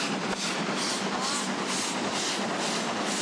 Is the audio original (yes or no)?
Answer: yes